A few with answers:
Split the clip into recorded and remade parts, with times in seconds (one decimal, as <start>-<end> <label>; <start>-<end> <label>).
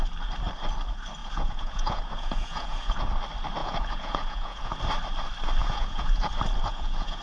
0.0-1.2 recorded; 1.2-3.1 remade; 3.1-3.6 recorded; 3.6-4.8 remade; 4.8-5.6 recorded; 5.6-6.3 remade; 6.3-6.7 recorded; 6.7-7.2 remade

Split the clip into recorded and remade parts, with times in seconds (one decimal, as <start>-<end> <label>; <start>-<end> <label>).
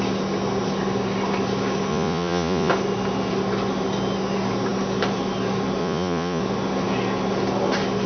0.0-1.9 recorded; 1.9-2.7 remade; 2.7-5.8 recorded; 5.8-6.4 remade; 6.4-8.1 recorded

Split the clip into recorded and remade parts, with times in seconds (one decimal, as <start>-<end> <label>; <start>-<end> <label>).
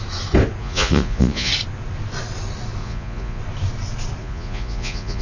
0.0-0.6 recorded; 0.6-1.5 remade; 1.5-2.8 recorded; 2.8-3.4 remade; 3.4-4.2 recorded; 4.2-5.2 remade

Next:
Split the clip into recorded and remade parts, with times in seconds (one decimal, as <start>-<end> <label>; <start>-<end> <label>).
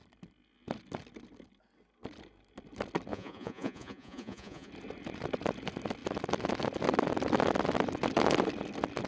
0.0-3.1 recorded; 3.1-4.7 remade; 4.7-9.1 recorded